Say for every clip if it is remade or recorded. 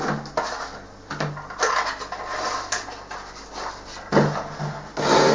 recorded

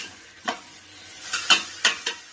remade